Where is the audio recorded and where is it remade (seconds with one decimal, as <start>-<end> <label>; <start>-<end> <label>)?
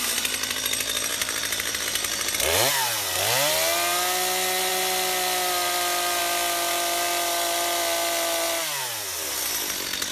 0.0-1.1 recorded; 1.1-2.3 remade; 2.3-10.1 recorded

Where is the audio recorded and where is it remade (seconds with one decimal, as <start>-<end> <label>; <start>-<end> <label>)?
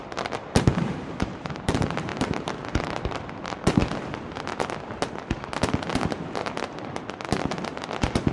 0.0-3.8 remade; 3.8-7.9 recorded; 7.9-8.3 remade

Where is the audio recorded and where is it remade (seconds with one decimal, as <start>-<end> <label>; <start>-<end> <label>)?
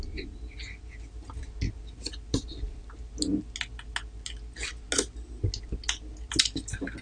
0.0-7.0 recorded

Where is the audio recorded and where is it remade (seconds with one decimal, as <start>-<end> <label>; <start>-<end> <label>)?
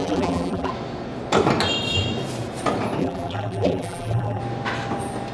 0.0-0.7 remade; 0.7-3.0 recorded; 3.0-4.4 remade; 4.4-5.3 recorded